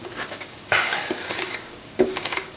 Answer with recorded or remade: remade